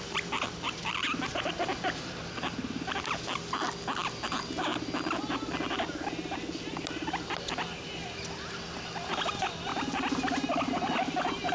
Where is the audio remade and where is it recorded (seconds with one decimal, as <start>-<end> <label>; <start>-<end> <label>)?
0.0-11.5 recorded